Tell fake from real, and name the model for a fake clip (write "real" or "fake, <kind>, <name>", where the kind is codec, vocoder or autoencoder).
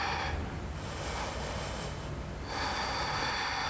real